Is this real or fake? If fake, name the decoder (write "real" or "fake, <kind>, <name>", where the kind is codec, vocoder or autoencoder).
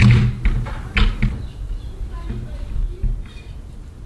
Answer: real